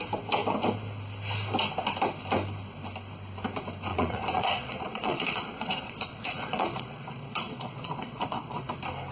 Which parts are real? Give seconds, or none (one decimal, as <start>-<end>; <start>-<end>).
0.0-3.9; 8.7-9.1